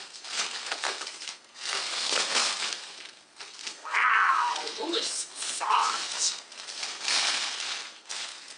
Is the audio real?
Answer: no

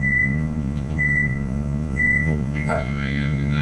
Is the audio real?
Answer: no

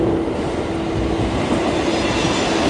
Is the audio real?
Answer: yes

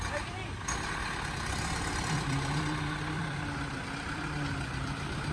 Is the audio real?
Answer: no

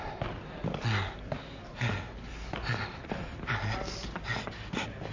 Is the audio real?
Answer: yes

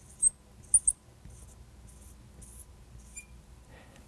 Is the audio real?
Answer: yes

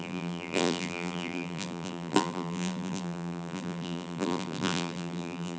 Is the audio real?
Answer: no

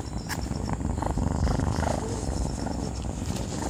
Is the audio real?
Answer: yes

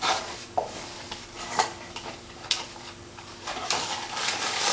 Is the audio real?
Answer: no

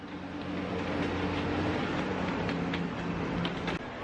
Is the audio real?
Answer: yes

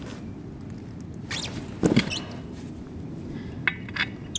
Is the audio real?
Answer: yes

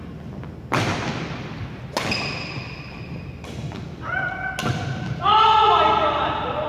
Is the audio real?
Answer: yes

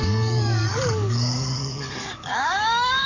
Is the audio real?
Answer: no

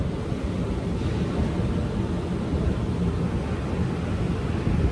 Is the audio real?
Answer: yes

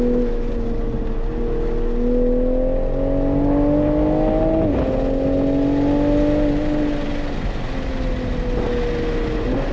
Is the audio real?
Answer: yes